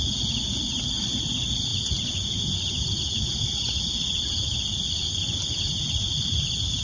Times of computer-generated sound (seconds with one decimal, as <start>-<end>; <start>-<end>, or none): none